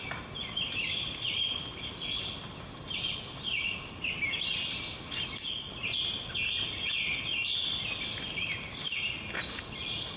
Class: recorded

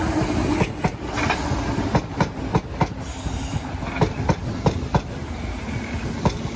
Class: recorded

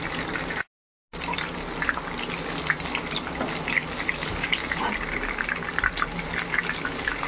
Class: recorded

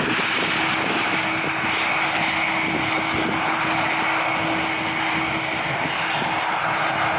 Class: recorded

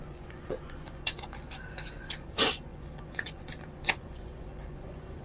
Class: remade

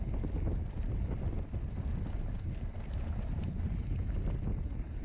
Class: recorded